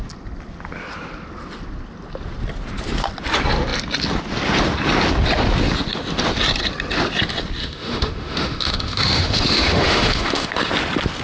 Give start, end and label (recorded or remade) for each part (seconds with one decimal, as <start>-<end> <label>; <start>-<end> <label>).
0.0-7.6 recorded; 7.6-10.7 remade; 10.7-11.2 recorded